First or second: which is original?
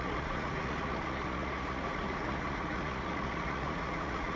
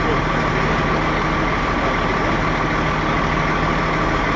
second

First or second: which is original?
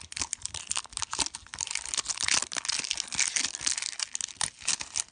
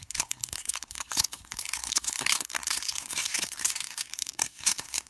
first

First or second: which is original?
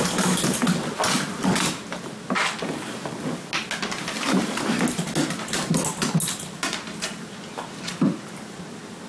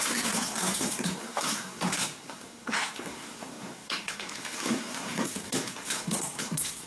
first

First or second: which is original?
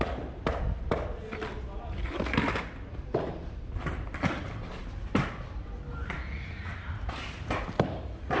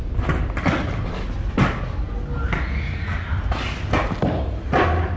second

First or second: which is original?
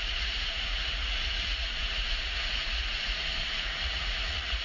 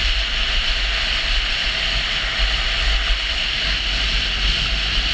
second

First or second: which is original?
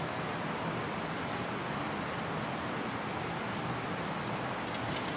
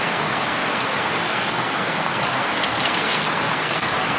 first